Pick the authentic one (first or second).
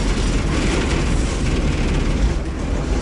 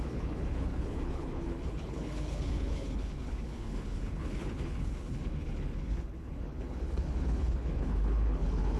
first